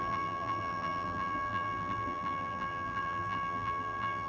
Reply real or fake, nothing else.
fake